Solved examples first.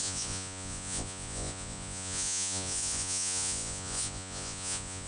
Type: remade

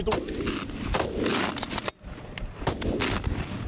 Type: recorded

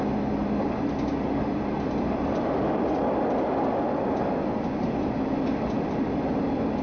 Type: recorded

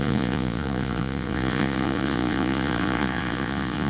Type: remade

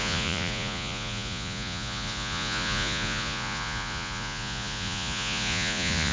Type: remade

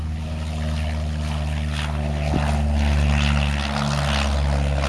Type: recorded